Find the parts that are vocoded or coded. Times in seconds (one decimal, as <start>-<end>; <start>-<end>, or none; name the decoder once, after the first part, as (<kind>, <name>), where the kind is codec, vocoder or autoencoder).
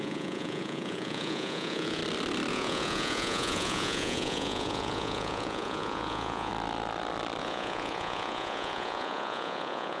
0.0-2.0 (vocoder, Vocos); 2.5-6.5; 7.4-10.0